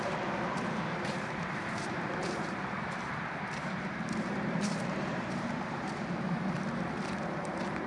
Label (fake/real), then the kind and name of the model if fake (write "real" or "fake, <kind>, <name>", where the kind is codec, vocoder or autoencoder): fake, vocoder, BigVGAN v2